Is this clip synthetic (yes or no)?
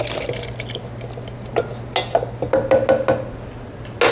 no